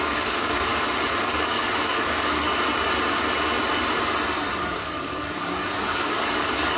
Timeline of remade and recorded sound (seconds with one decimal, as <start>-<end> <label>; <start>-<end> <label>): 0.0-0.7 remade; 0.7-1.2 recorded; 1.2-2.5 remade; 2.5-4.6 recorded; 4.6-6.8 remade